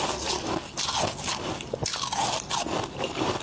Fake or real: real